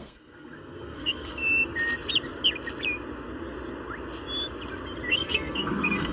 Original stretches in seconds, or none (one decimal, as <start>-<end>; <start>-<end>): 1.4-5.1